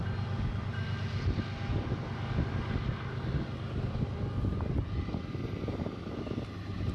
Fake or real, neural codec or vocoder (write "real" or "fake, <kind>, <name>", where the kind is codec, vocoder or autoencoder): real